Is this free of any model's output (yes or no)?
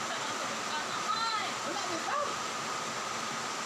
no